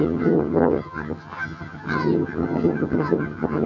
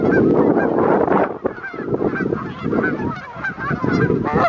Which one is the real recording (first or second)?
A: second